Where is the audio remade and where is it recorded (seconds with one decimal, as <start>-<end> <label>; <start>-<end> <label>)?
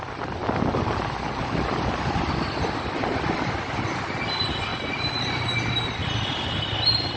0.0-4.7 recorded; 4.7-5.2 remade; 5.2-6.0 recorded; 6.0-6.6 remade; 6.6-7.2 recorded